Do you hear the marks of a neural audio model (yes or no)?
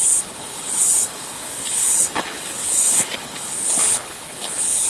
yes